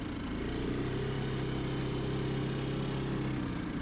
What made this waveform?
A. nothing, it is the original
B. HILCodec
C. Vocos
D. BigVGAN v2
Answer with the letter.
A